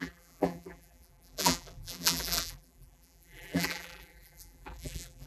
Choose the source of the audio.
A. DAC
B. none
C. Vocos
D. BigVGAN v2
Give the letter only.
D